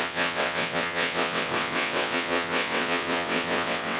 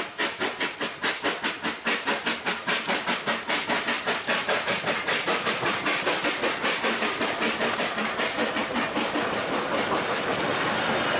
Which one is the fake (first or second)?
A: first